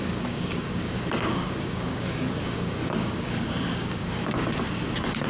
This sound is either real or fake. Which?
fake